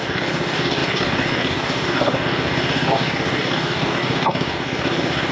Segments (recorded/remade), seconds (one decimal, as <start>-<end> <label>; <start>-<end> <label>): 0.0-5.3 remade